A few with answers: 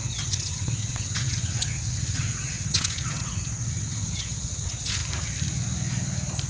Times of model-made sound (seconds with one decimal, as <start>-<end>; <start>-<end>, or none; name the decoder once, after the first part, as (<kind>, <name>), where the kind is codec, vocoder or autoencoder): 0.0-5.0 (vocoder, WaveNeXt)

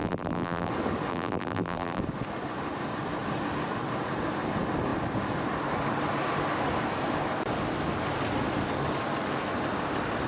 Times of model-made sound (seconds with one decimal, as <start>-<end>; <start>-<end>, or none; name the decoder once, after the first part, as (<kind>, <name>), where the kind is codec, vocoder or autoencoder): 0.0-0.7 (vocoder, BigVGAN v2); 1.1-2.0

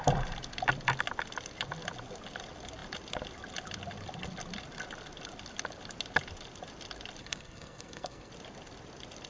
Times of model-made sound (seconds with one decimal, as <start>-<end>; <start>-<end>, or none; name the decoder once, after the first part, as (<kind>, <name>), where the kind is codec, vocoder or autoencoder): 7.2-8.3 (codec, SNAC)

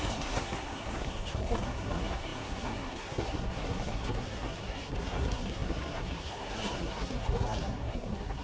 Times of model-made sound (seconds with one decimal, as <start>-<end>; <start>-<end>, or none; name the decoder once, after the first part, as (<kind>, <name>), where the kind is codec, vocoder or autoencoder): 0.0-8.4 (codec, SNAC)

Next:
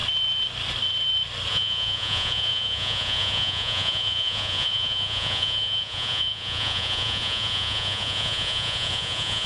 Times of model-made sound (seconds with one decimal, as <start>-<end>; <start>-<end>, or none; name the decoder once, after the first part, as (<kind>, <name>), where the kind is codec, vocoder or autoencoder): 1.5-9.5 (vocoder, Vocos)

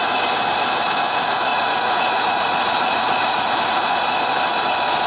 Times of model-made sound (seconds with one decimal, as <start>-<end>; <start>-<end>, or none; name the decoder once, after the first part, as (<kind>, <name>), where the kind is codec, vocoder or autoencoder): 1.5-4.1 (vocoder, Vocos)

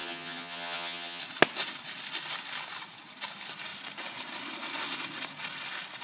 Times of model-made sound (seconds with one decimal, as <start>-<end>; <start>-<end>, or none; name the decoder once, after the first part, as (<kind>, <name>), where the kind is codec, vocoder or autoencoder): 0.0-1.2 (vocoder, HiFi-GAN)

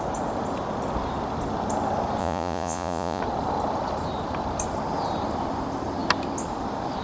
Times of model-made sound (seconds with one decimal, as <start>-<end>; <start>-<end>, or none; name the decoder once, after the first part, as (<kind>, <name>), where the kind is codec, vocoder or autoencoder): 2.2-3.2 (vocoder, Vocos)